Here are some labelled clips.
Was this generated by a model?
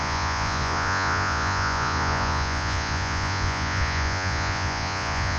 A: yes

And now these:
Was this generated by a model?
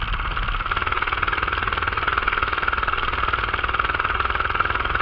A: no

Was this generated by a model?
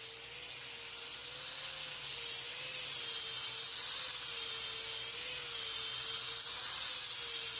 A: no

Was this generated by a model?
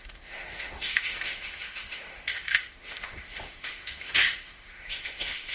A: yes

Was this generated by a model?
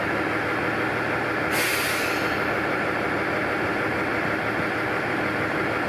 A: no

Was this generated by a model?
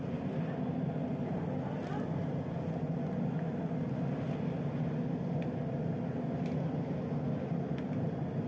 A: no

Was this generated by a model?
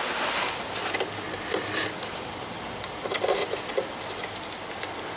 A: no